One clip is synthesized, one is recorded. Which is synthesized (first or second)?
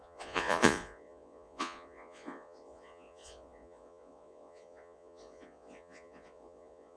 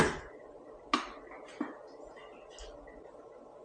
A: first